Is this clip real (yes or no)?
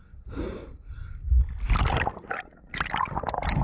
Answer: yes